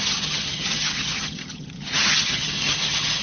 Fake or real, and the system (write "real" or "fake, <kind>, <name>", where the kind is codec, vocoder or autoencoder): fake, vocoder, HiFi-GAN